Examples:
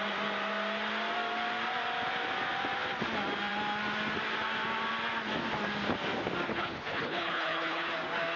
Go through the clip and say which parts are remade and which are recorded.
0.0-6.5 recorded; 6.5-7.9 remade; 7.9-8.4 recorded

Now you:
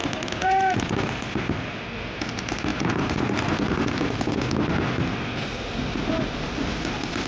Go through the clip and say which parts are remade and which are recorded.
0.0-7.3 recorded

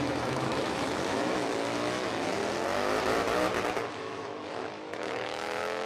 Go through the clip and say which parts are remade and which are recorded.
0.0-2.4 remade; 2.4-3.9 recorded; 3.9-5.8 remade

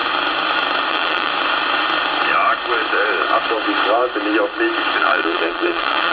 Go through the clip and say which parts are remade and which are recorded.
0.0-0.9 recorded; 0.9-1.3 remade; 1.3-5.0 recorded; 5.0-6.1 remade

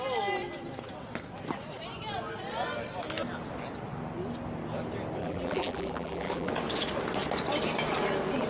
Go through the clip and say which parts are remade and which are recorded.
0.0-5.2 recorded; 5.2-6.5 remade; 6.5-8.5 recorded

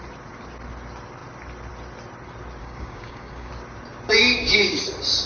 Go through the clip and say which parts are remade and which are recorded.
0.0-2.6 recorded; 2.6-3.5 remade; 3.5-4.2 recorded; 4.2-4.8 remade; 4.8-5.3 recorded